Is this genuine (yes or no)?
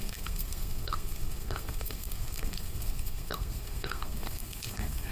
no